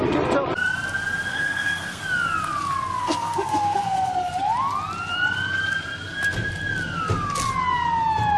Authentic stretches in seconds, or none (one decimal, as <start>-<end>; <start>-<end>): 0.0-1.3; 2.0-3.0; 4.3-8.4